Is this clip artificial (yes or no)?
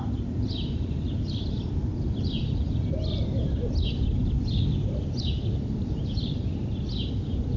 no